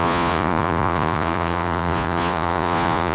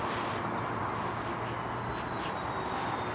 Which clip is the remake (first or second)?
first